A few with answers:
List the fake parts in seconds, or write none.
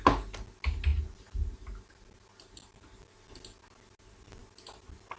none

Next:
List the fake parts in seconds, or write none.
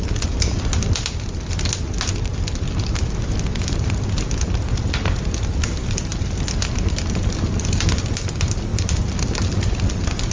none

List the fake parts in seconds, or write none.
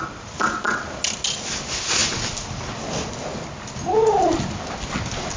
none